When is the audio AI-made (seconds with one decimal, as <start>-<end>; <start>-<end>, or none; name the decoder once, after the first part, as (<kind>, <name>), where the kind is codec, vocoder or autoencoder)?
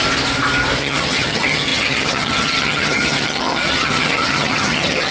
0.8-5.1 (vocoder, HiFi-GAN)